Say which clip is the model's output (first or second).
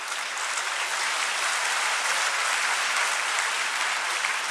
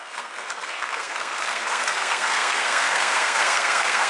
second